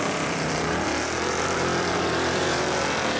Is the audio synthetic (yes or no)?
yes